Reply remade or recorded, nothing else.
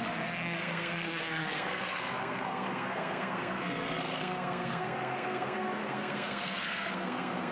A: remade